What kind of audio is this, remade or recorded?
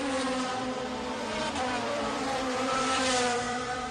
remade